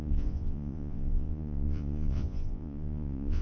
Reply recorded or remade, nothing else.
remade